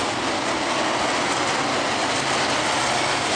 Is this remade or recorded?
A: recorded